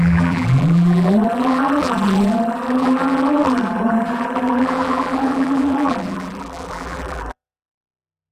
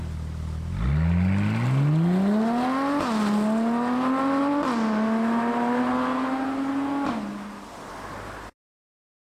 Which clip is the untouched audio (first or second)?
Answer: second